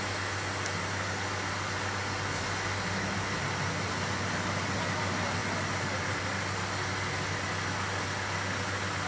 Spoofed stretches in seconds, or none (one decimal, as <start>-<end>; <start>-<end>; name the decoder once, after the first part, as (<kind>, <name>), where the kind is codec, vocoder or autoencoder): none